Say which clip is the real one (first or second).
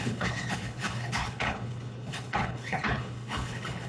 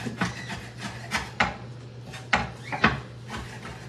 second